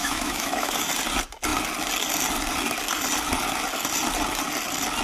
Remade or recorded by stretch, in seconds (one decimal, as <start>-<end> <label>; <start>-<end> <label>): 0.0-0.9 remade; 0.9-5.0 recorded

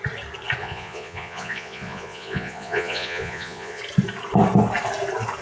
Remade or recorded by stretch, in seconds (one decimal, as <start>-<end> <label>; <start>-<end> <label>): 0.0-0.6 recorded; 0.6-3.8 remade; 3.8-5.4 recorded

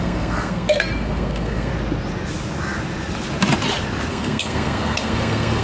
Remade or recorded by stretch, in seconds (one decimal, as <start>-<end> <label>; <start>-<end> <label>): 0.0-1.7 remade; 1.7-4.1 recorded; 4.1-5.6 remade